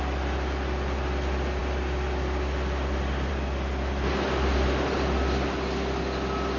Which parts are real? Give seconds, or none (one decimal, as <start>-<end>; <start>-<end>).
0.0-6.6